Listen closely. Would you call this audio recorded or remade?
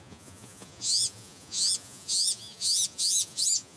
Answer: remade